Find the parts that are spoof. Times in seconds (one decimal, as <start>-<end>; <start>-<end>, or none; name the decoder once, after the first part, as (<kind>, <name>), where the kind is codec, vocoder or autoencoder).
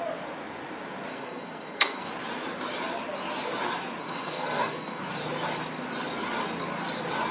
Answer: 1.1-2.1 (codec, SNAC); 4.0-5.0